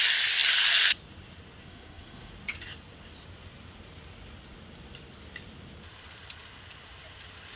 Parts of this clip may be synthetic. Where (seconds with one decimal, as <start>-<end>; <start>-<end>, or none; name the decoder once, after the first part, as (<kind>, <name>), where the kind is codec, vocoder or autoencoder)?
1.6-2.3 (codec, SNAC)